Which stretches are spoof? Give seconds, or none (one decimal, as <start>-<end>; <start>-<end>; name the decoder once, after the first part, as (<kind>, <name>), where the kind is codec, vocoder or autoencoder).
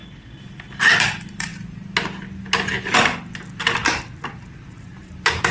1.0-1.5 (vocoder, BigVGAN v2); 4.8-5.5